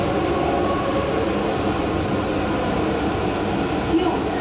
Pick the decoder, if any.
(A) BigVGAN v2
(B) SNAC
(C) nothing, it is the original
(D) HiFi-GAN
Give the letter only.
C